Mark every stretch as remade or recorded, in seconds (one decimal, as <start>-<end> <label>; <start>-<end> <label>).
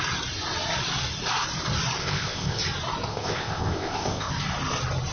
0.0-2.0 recorded; 2.0-2.6 remade; 2.6-3.1 recorded; 3.1-4.3 remade; 4.3-5.1 recorded